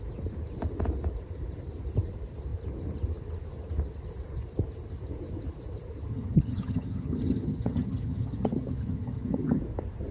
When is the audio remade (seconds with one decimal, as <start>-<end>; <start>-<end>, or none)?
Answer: 6.1-9.6